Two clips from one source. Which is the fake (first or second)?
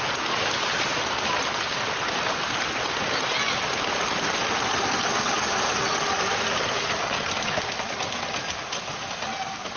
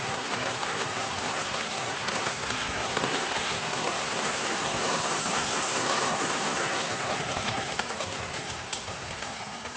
second